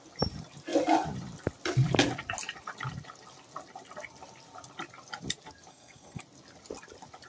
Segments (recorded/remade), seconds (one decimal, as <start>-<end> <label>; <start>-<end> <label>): 0.0-5.7 recorded; 5.7-6.2 remade; 6.2-7.3 recorded